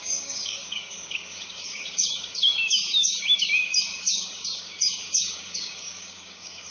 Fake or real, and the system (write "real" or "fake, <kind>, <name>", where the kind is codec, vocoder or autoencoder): fake, codec, DAC